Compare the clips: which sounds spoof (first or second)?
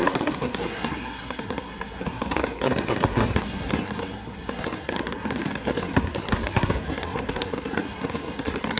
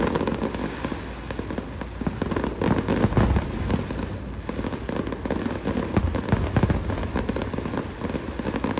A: first